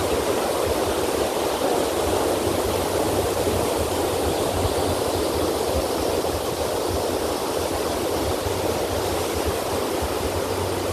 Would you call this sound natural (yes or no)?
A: yes